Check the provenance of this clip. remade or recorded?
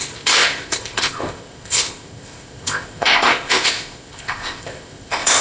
remade